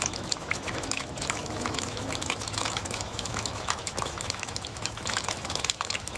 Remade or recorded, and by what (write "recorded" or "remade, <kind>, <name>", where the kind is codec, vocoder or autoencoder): remade, autoencoder, DAC-VAE